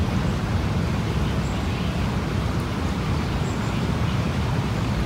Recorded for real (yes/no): yes